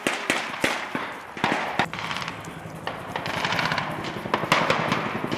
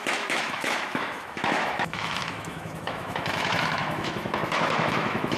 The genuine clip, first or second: first